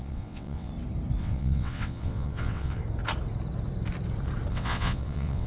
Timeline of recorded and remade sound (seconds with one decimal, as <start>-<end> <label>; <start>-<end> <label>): 0.0-0.7 remade; 0.7-1.2 recorded; 1.2-2.8 remade; 2.8-4.5 recorded; 4.5-5.5 remade